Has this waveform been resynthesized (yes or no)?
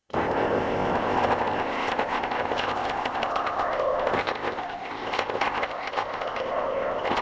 yes